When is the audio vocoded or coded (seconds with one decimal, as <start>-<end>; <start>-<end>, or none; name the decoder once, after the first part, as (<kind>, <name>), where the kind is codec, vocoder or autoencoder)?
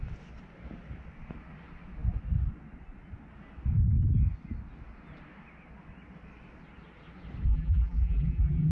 7.5-8.7 (vocoder, BigVGAN v2)